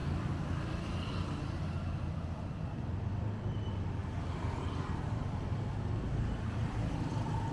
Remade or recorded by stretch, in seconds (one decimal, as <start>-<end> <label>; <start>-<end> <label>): 0.0-7.5 recorded